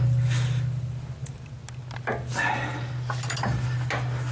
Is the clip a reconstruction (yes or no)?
no